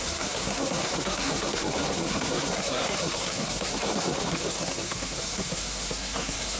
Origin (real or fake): fake